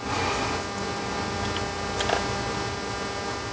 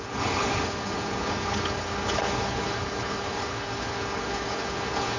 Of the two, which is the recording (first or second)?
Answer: first